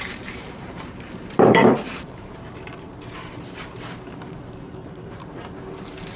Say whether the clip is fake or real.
fake